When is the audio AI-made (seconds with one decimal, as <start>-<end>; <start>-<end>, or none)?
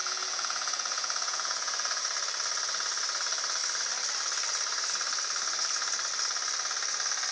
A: 0.0-2.0